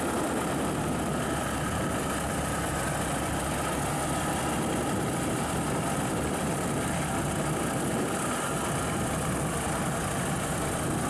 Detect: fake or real real